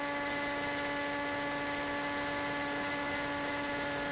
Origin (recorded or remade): recorded